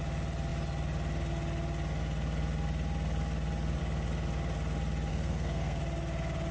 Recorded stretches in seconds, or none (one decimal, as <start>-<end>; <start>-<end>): 0.0-5.1; 5.8-6.5